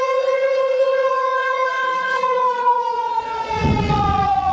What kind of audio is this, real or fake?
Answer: fake